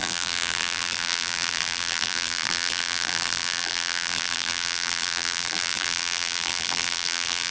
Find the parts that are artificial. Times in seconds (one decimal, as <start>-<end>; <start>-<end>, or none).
0.0-7.5